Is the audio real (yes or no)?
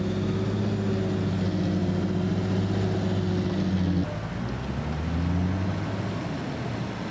yes